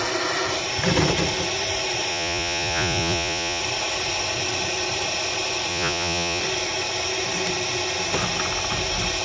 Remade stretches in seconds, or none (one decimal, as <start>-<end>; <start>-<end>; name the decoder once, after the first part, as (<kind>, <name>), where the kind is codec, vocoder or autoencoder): 2.1-3.6 (vocoder, Vocos); 5.7-6.4